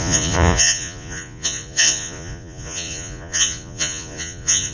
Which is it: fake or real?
fake